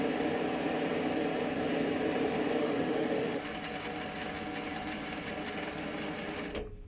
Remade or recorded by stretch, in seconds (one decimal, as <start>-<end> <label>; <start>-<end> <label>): 0.0-2.6 recorded; 2.6-3.4 remade; 3.4-6.9 recorded